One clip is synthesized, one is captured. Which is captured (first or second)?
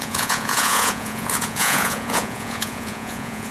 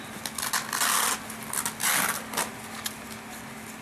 second